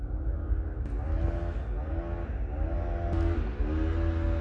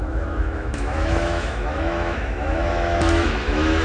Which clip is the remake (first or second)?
second